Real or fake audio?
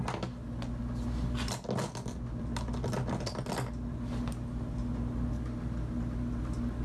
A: real